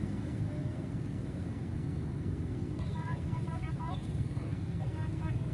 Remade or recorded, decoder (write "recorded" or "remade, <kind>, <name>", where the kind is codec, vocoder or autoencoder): remade, codec, SNAC